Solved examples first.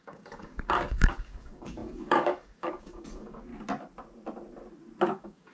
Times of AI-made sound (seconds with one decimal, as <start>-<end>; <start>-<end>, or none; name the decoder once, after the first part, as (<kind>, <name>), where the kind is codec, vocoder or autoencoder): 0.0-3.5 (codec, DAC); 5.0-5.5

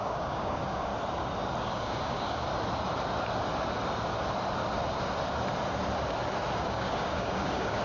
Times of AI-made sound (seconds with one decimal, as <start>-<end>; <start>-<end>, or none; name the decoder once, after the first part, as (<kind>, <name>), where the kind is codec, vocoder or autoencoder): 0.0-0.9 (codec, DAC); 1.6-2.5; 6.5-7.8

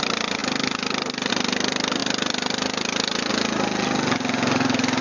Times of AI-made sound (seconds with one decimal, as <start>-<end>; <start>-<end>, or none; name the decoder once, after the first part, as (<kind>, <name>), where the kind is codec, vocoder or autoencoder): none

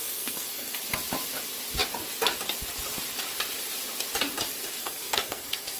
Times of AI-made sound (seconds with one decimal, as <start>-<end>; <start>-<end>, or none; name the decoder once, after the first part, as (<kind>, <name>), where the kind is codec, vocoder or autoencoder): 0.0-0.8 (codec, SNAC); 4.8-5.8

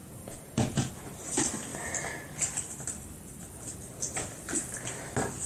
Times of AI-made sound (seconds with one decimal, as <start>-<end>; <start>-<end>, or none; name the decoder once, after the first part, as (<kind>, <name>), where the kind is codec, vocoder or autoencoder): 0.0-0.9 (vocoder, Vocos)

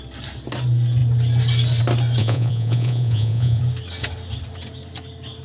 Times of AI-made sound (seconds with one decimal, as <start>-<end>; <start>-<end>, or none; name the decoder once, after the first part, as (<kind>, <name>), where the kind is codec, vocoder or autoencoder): 2.2-3.6 (vocoder, Vocos)